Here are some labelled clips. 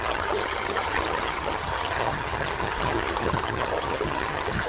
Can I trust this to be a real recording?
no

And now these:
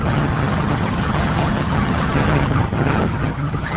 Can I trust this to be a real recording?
no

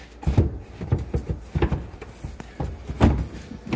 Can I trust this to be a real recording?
yes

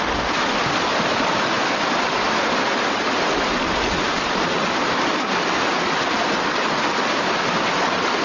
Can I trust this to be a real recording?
yes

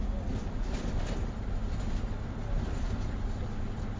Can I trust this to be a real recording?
yes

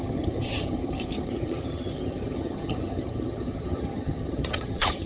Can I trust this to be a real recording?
no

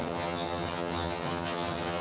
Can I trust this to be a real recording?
no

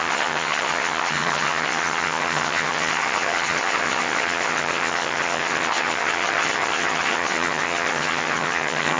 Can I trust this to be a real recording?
no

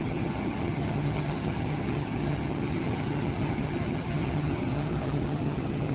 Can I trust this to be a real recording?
no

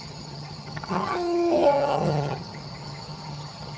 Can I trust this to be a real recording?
no